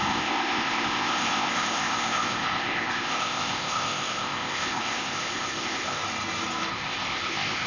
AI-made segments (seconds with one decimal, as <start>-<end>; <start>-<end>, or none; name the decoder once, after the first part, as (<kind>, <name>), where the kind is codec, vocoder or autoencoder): 0.0-6.0 (codec, ZipCodec); 6.7-7.7